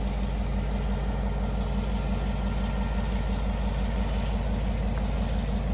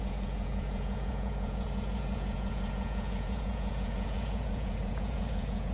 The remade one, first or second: second